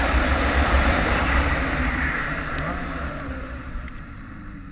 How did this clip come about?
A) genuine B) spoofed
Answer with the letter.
B